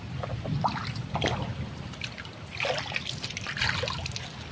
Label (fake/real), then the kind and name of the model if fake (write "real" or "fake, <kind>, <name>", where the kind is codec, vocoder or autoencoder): real